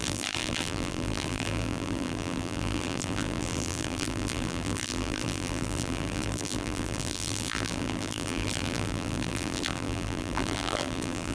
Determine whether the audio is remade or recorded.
remade